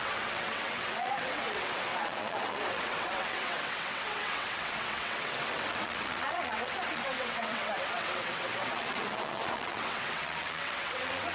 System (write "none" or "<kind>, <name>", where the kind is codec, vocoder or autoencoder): vocoder, WaveNeXt